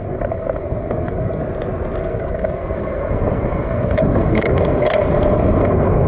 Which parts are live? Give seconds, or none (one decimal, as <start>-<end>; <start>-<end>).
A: 1.4-2.0